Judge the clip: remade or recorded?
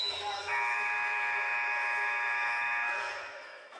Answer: remade